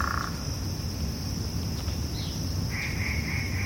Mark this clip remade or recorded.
recorded